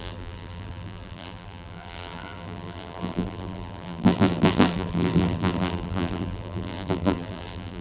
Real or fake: fake